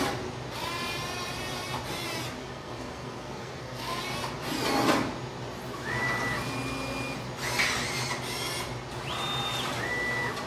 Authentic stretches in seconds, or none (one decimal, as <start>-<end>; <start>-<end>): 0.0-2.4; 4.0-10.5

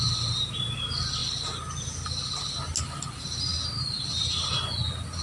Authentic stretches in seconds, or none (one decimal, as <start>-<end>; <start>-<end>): 0.0-5.2

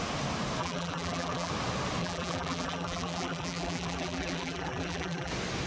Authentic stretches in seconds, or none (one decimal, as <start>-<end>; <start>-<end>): 0.0-0.6; 1.5-2.0; 5.3-5.7

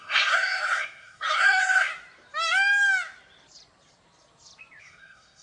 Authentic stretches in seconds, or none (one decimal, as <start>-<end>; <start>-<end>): 1.9-4.8